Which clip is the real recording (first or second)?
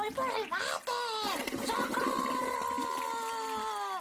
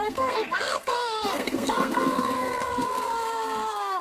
first